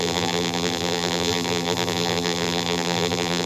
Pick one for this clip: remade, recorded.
remade